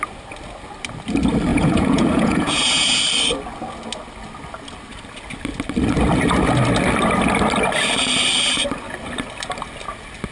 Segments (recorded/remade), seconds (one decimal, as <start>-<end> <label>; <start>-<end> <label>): 0.0-1.5 recorded; 1.5-3.0 remade; 3.0-10.3 recorded